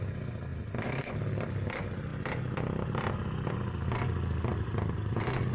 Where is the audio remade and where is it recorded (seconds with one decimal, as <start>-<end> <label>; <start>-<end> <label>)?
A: 0.0-2.1 remade; 2.1-3.5 recorded; 3.5-5.5 remade